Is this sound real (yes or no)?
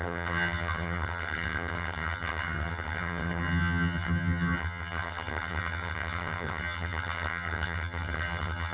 no